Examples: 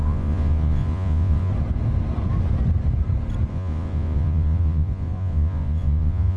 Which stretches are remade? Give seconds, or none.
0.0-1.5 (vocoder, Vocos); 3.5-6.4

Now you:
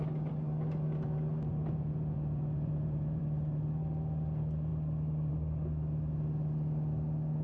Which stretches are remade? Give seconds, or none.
1.5-3.2 (vocoder, Vocos)

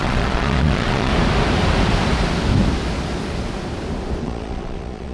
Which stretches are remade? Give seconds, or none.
0.0-1.1 (vocoder, Vocos); 4.2-5.1

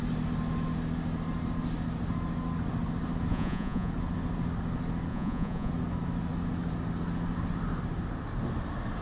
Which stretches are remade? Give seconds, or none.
3.3-3.9 (vocoder, Vocos); 5.1-5.7

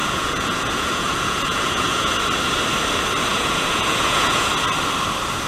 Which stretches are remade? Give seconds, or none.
0.0-2.2 (vocoder, Vocos); 3.3-4.5

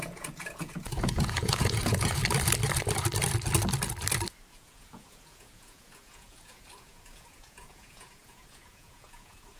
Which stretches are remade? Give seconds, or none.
0.0-2.2 (vocoder, Vocos); 4.5-9.6

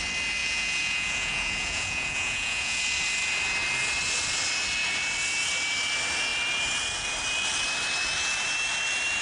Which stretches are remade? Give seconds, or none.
0.4-2.8 (vocoder, Vocos)